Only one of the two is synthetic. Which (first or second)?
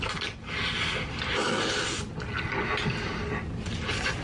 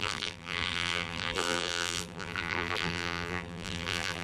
second